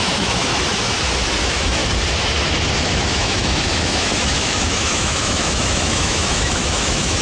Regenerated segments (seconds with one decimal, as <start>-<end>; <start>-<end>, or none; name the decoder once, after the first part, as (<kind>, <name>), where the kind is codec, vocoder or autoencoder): 0.0-0.5 (autoencoder, DAC-VAE); 1.4-1.8; 2.8-7.2